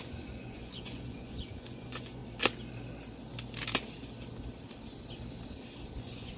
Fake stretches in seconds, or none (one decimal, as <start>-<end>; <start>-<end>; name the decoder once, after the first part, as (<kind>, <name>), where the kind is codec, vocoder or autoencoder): 0.0-2.2 (vocoder, Vocos); 6.0-6.4

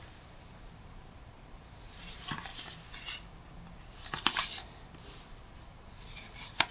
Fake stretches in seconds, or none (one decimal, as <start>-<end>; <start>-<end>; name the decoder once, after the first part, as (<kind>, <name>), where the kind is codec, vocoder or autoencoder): 0.0-2.5 (vocoder, BigVGAN v2); 5.3-6.7

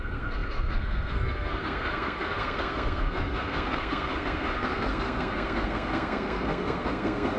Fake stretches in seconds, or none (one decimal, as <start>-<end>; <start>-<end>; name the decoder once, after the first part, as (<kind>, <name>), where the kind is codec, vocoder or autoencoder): 0.0-7.4 (codec, SNAC)

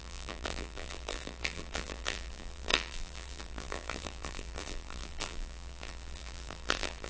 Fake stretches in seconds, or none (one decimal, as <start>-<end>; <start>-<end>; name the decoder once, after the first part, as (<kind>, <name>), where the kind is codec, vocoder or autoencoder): 0.0-7.1 (vocoder, BigVGAN v2)

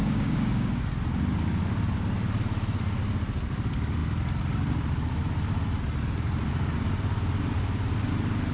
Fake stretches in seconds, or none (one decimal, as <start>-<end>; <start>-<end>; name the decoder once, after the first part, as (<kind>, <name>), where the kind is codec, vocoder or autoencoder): 0.0-0.8 (codec, DAC)

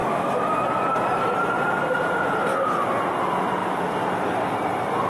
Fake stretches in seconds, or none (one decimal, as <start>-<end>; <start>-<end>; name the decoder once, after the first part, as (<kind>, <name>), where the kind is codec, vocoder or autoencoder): none

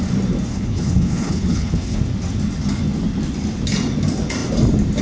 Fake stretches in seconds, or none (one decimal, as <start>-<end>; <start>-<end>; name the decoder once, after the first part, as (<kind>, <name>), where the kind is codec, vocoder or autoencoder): 0.5-2.0 (codec, HILCodec)

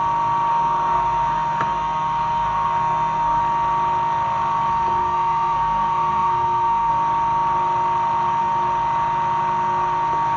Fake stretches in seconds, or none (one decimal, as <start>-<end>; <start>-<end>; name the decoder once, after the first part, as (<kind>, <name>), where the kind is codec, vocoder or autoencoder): 0.5-3.4 (codec, SNAC); 5.0-6.9